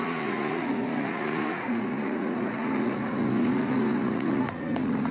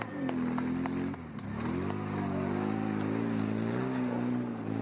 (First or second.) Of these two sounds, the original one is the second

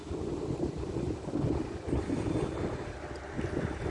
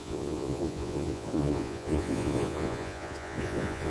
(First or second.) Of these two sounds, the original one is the first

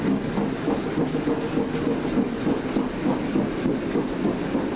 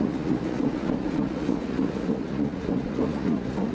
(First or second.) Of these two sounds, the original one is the first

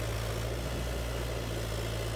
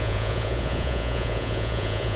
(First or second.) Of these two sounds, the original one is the first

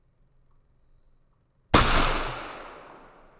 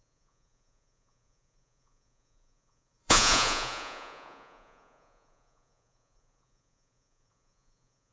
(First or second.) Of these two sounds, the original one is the first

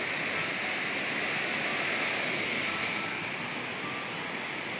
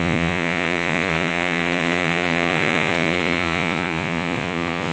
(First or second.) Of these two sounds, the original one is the first